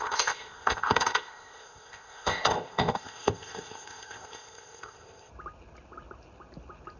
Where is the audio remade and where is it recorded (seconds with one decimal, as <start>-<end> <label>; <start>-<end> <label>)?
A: 0.0-5.3 remade; 5.3-7.0 recorded